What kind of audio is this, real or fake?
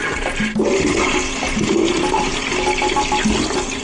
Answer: real